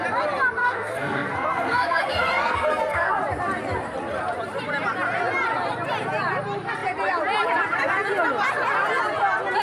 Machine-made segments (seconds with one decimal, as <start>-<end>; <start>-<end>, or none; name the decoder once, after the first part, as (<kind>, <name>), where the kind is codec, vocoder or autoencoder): 0.6-3.1 (codec, SNAC)